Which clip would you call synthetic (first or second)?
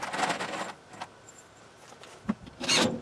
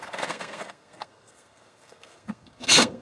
second